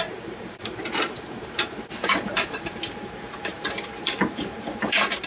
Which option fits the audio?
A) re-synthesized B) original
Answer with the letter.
A